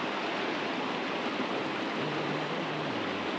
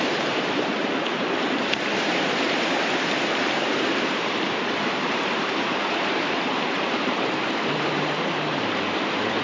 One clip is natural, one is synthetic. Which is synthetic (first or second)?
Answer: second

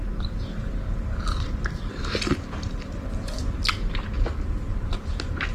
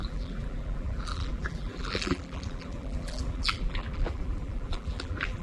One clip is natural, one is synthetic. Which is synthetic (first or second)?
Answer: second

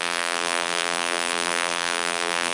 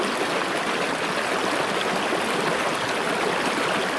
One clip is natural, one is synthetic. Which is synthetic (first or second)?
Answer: first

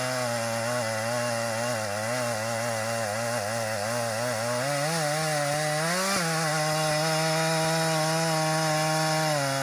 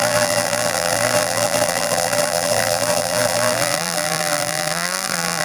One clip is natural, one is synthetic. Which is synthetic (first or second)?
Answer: second